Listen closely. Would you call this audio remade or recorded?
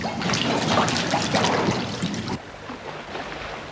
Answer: recorded